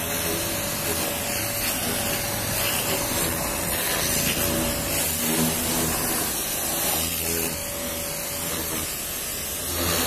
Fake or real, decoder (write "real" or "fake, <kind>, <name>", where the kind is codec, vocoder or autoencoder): real